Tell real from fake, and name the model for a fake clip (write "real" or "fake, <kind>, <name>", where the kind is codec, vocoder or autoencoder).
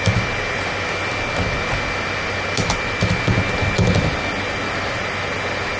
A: real